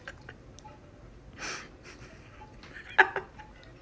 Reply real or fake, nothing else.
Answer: real